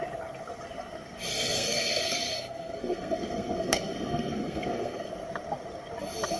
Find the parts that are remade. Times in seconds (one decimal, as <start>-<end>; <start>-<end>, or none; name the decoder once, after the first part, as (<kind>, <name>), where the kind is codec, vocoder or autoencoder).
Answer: 1.3-5.1 (codec, SNAC)